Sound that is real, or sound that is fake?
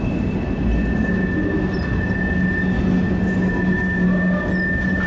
real